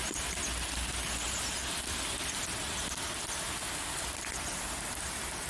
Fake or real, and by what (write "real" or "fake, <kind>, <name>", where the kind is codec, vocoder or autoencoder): real